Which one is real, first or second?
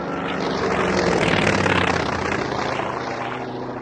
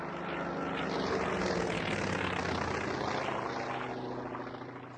second